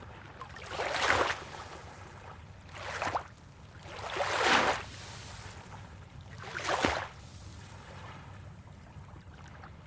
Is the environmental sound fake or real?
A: real